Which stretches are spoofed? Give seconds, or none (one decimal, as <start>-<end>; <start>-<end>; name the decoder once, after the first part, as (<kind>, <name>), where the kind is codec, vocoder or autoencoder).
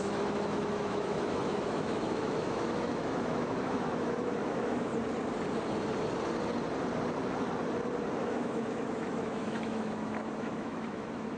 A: 0.0-4.9 (autoencoder, DAC-VAE); 8.2-11.4